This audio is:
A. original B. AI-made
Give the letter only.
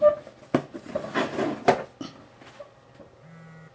A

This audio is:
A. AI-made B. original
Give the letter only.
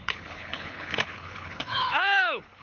A